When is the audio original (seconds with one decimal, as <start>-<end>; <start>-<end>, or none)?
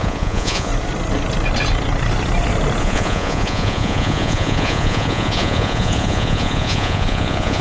0.7-2.8